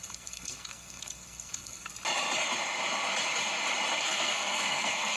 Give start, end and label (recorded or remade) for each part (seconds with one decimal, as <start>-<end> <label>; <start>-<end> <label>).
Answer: 0.0-1.9 remade; 1.9-4.0 recorded; 4.0-5.2 remade